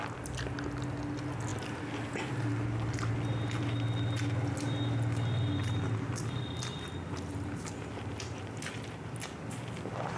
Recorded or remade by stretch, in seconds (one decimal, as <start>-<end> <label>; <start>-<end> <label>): 0.0-10.2 recorded